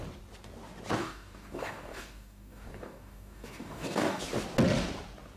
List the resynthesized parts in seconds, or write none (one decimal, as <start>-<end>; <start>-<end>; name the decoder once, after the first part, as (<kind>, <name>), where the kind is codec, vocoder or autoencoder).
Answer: 1.0-4.2 (codec, DAC)